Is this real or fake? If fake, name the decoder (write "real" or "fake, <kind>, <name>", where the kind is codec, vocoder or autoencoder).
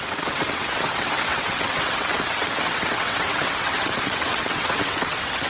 fake, vocoder, WaveNeXt